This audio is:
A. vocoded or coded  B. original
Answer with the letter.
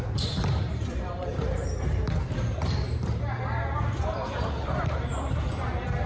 A